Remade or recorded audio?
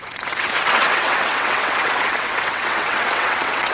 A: remade